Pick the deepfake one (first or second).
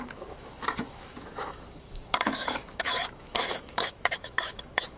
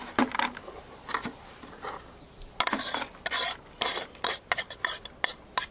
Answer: first